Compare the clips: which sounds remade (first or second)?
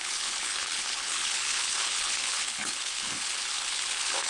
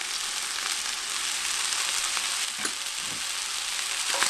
first